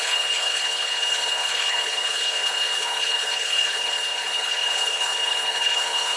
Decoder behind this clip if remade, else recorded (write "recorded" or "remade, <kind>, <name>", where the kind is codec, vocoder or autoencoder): remade, codec, HILCodec